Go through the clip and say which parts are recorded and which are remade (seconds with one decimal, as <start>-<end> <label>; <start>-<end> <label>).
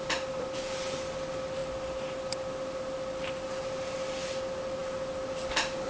0.0-5.9 recorded